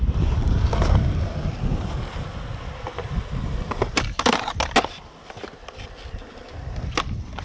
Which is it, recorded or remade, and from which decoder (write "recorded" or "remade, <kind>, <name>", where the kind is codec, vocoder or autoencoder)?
recorded